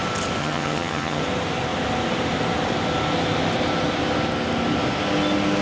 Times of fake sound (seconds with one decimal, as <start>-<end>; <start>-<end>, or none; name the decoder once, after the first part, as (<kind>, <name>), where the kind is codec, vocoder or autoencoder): 0.4-1.2 (vocoder, HiFi-GAN)